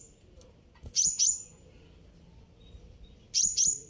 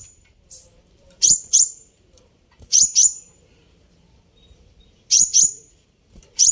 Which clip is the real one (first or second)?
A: first